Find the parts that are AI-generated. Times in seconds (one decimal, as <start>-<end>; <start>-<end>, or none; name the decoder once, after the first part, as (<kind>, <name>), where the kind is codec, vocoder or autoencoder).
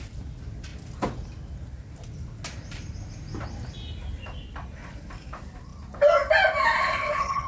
6.8-7.5 (codec, HILCodec)